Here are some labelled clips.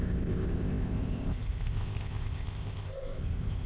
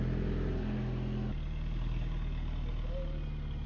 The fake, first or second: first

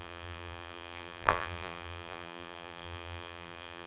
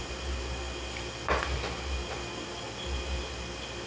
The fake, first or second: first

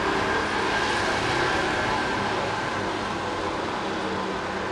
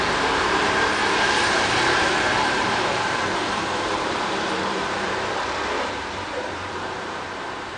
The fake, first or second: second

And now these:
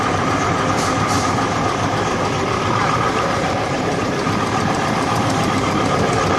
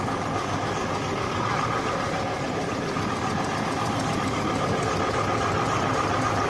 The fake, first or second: first